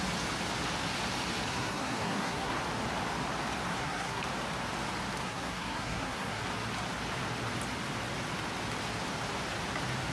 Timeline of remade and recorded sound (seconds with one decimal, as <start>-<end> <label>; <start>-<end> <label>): 0.0-1.5 recorded; 1.5-2.6 remade; 2.6-3.7 recorded; 3.7-4.2 remade; 4.2-5.2 recorded; 5.2-6.4 remade; 6.4-10.1 recorded